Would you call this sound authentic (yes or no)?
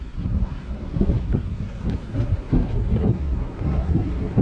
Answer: no